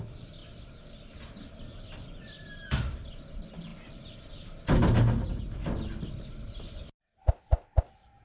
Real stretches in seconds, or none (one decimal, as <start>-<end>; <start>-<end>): 0.0-8.2